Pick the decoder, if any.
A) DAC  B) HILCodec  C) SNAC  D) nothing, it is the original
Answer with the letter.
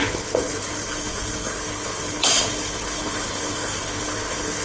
B